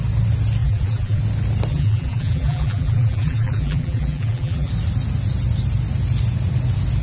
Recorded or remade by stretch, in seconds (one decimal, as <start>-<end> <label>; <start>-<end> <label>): 0.0-0.6 recorded; 0.6-1.2 remade; 1.2-1.7 recorded; 1.7-4.7 remade; 4.7-7.0 recorded